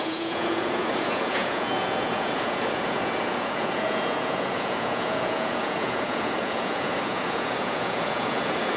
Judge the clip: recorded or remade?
remade